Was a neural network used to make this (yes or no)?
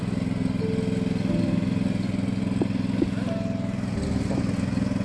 no